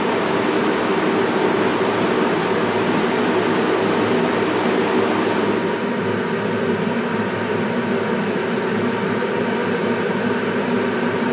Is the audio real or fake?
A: real